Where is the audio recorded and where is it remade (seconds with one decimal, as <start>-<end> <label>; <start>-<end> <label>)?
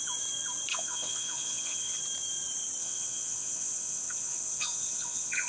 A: 0.0-0.7 recorded; 0.7-2.0 remade; 2.0-2.8 recorded; 2.8-5.5 remade